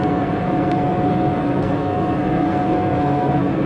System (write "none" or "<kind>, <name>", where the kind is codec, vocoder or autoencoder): codec, SNAC